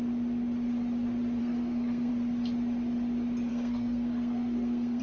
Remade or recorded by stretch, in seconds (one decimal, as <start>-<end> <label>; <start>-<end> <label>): 0.0-1.4 recorded; 1.4-2.1 remade; 2.1-3.5 recorded; 3.5-5.0 remade